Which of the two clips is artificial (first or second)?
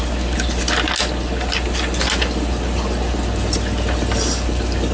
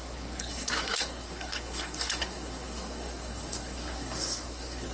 second